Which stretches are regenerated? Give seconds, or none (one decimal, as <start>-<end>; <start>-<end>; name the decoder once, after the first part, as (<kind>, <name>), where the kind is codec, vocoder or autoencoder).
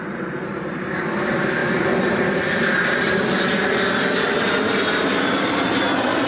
none